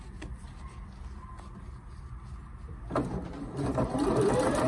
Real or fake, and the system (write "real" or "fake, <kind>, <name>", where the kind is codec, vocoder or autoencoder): real